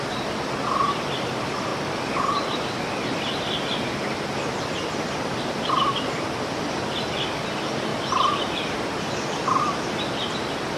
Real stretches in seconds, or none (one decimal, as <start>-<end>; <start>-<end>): 0.0-1.7; 3.6-7.9; 8.7-10.8